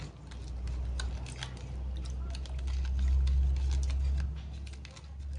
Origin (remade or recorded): recorded